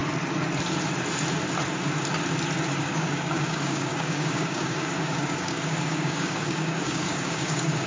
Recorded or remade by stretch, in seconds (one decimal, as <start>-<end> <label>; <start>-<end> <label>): 0.0-2.8 recorded; 2.8-7.9 remade